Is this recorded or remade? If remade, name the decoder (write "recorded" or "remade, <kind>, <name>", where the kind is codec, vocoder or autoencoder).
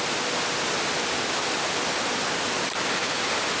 recorded